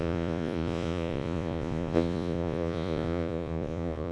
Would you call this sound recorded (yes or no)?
no